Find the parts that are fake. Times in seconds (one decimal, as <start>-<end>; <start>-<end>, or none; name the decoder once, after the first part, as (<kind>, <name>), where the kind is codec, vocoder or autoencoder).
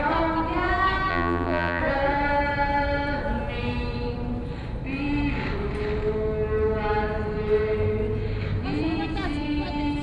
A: 1.1-1.8 (vocoder, BigVGAN v2)